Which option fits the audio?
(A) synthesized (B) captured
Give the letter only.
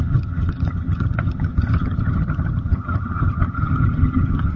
A